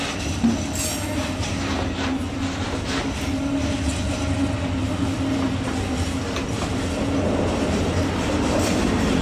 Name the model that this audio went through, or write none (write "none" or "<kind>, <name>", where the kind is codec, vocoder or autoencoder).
none